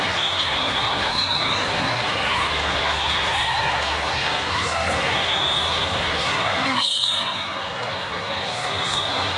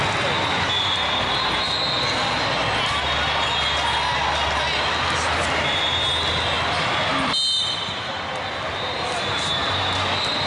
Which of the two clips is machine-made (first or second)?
first